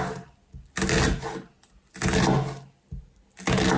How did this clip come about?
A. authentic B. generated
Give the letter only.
A